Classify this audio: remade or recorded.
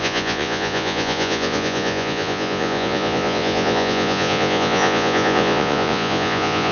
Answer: remade